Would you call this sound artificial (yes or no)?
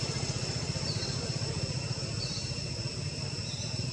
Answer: yes